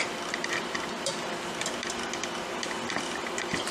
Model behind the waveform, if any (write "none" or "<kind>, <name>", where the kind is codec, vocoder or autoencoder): none